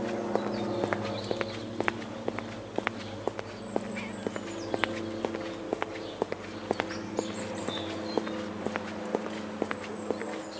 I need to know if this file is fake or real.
real